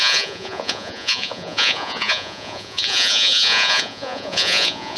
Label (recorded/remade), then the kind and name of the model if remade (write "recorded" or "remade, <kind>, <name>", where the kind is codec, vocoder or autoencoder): remade, vocoder, Vocos